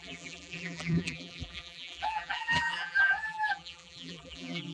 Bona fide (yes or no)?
no